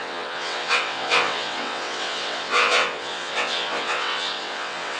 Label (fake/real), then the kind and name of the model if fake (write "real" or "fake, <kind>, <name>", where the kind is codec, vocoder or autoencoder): fake, vocoder, WaveNeXt